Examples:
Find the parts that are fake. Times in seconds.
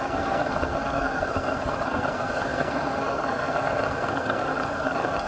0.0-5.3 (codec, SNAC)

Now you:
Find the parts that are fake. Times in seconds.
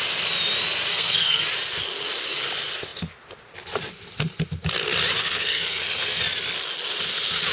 0.9-1.4 (codec, SNAC); 5.2-6.2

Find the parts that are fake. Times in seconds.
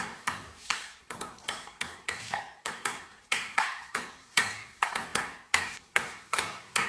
0.0-6.9 (codec, SNAC)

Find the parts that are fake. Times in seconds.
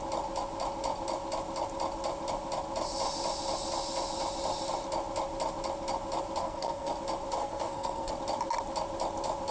6.4-6.9 (codec, SNAC); 7.4-8.1